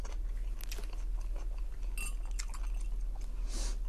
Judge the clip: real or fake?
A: real